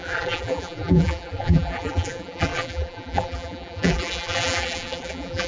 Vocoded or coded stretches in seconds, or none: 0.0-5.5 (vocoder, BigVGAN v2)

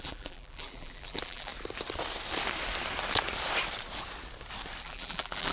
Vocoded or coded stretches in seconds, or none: 0.0-1.5 (vocoder, BigVGAN v2); 4.8-5.5

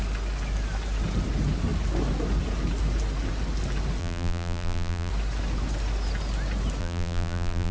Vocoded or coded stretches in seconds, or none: 4.0-5.1 (vocoder, BigVGAN v2); 6.8-7.7

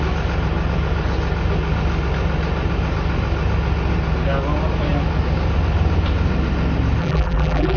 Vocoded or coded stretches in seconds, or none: 7.0-7.8 (vocoder, BigVGAN v2)

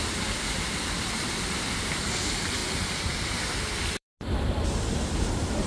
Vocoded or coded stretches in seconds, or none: 2.6-4.1 (vocoder, BigVGAN v2)